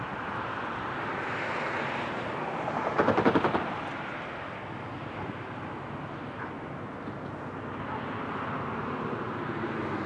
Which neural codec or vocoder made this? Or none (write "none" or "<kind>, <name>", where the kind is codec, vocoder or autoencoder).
none